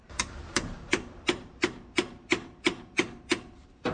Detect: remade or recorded remade